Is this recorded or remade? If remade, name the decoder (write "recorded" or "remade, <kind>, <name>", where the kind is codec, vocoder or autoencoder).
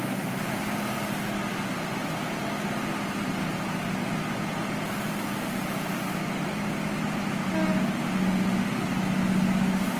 recorded